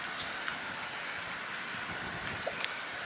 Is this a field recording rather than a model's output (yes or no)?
yes